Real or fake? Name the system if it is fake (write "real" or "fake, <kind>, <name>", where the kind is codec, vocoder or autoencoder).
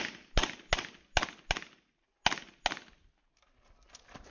real